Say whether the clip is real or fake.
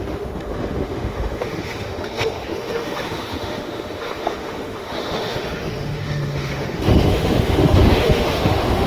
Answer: fake